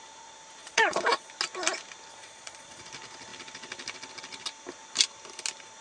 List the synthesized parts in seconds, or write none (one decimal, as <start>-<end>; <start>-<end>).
0.6-1.3; 2.1-2.8